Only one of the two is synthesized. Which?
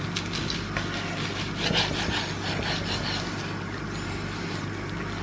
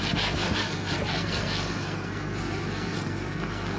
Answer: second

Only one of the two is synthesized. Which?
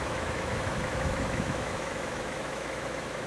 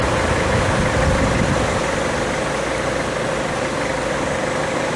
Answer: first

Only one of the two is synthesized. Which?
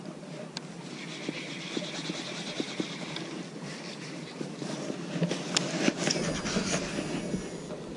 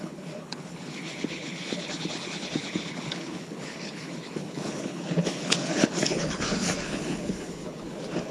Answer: second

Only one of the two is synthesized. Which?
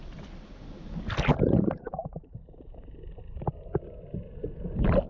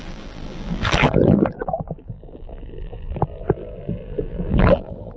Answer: second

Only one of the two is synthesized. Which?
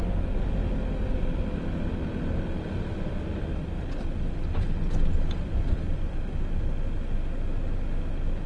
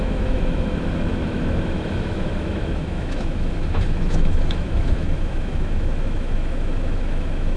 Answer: second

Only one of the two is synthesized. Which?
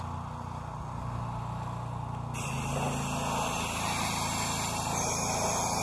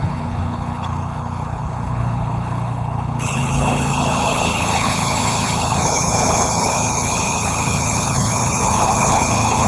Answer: second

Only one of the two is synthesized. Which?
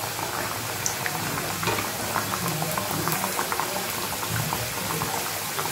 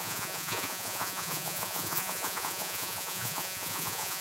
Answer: second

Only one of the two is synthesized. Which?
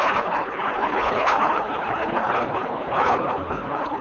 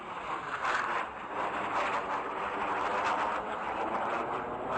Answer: first